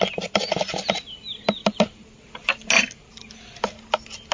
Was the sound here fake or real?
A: real